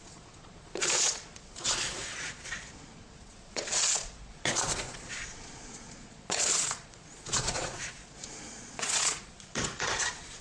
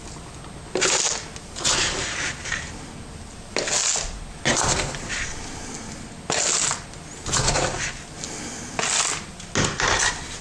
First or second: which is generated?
first